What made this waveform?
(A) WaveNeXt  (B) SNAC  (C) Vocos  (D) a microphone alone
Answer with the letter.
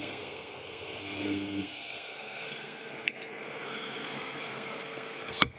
B